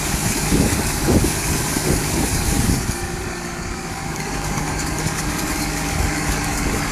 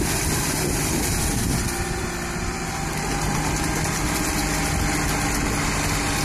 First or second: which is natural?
second